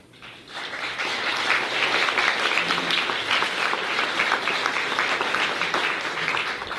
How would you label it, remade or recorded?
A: recorded